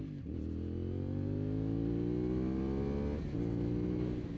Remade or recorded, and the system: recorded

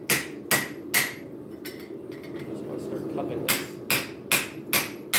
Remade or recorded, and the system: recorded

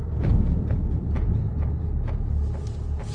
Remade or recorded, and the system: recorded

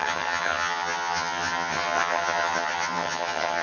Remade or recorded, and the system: remade, vocoder, HiFi-GAN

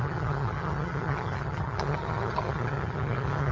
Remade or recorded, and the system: remade, vocoder, HiFi-GAN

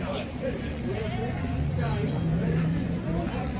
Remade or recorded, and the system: remade, vocoder, Vocos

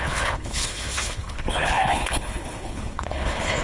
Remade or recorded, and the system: remade, codec, HILCodec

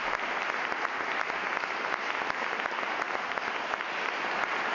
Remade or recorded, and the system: recorded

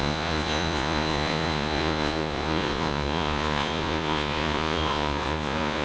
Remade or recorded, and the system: remade, vocoder, Vocos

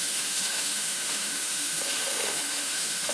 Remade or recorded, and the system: remade, autoencoder, DAC-VAE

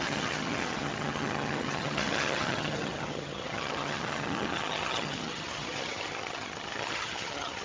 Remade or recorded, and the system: remade, vocoder, HiFi-GAN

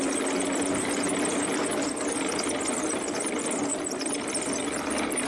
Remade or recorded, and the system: recorded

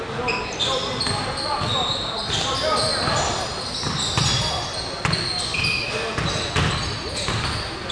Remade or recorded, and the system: recorded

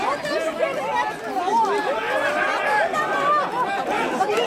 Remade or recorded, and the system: recorded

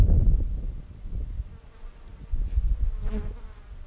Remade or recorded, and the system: recorded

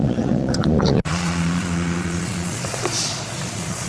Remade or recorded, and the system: remade, vocoder, Vocos